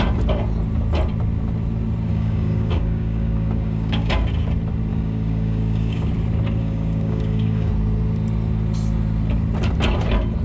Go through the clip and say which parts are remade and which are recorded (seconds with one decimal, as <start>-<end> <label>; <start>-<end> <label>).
0.0-2.1 recorded; 2.1-4.1 remade; 4.1-4.9 recorded; 4.9-6.1 remade; 6.1-6.6 recorded; 6.6-7.7 remade; 7.7-10.4 recorded